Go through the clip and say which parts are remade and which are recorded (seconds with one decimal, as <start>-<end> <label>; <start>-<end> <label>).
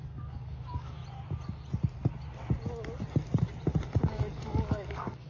0.0-1.0 remade; 1.0-4.0 recorded; 4.0-5.3 remade